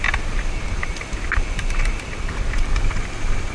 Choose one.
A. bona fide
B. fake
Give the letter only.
A